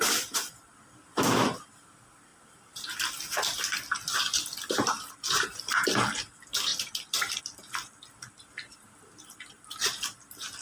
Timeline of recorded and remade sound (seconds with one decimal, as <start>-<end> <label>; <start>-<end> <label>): 0.0-10.6 recorded